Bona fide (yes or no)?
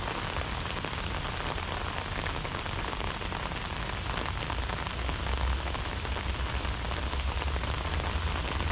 yes